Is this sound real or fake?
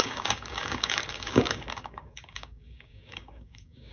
fake